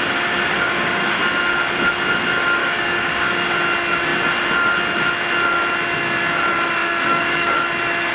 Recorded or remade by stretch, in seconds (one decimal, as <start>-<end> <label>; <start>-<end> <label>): 0.0-0.5 recorded; 0.5-1.2 remade; 1.2-2.6 recorded; 2.6-3.5 remade; 3.5-6.8 recorded; 6.8-7.6 remade; 7.6-8.1 recorded